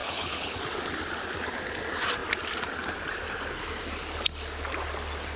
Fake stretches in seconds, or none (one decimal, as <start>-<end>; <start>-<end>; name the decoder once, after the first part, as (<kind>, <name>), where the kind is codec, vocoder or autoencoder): 0.0-0.6 (codec, HILCodec)